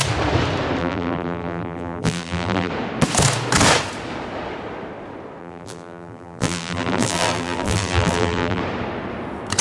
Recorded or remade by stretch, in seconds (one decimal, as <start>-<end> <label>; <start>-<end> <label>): 0.0-0.8 recorded; 0.8-2.7 remade; 2.7-5.4 recorded; 5.4-8.6 remade; 8.6-9.6 recorded